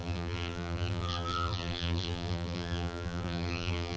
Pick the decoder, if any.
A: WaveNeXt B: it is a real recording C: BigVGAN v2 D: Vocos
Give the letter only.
C